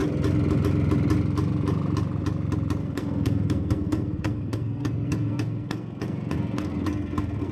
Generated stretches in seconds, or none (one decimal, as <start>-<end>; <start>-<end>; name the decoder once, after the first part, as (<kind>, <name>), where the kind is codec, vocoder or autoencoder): 2.8-7.5 (codec, SNAC)